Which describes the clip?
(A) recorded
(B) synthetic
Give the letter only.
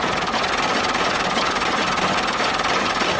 A